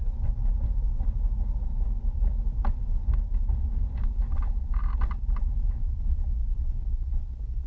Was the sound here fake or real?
fake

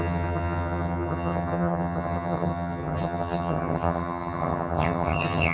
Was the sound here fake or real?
fake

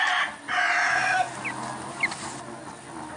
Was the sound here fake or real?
real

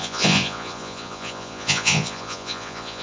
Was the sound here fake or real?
fake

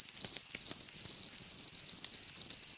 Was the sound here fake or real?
real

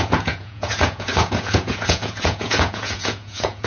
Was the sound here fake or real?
fake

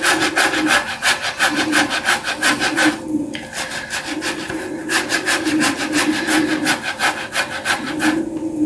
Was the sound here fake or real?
real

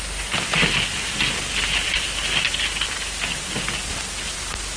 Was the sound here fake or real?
real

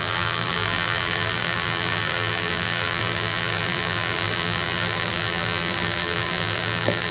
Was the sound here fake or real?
fake